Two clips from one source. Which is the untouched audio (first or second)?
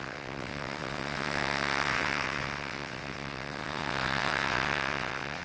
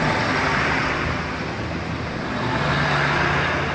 second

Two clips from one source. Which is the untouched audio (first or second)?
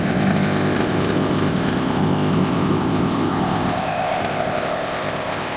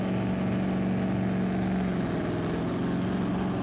second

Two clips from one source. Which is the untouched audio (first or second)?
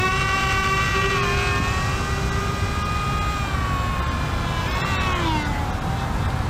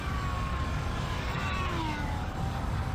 first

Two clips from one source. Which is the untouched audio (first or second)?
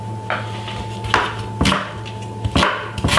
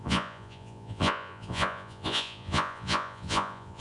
first